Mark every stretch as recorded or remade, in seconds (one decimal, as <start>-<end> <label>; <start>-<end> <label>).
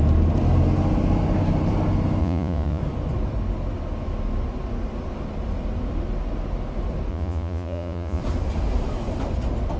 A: 0.0-2.2 recorded; 2.2-2.8 remade; 2.8-7.1 recorded; 7.1-8.2 remade; 8.2-9.8 recorded